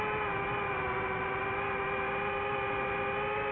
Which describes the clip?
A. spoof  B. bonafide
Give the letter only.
B